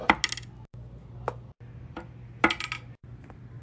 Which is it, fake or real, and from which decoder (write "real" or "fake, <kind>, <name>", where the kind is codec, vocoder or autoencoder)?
real